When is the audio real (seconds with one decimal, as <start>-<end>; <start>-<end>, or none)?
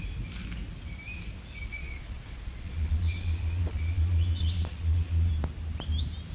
0.0-1.7; 5.3-6.3